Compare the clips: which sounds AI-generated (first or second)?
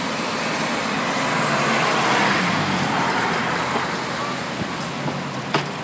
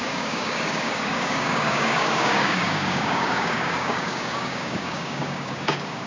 second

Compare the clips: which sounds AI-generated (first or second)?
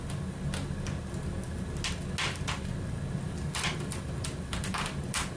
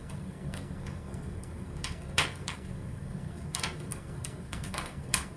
second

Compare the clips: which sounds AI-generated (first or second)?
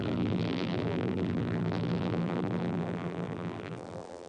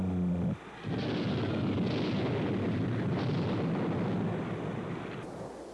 first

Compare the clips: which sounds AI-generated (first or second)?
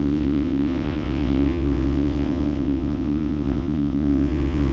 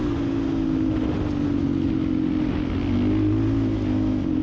first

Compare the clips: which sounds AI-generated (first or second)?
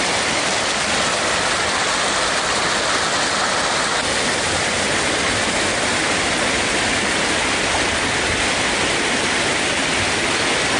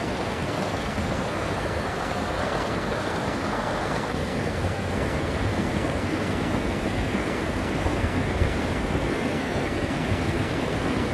second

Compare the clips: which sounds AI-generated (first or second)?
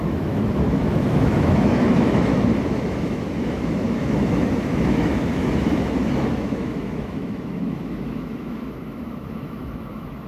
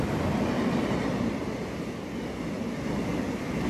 first